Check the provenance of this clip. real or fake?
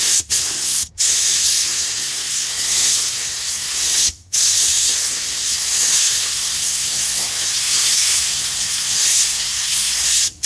fake